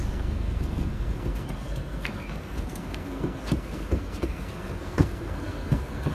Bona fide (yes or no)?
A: no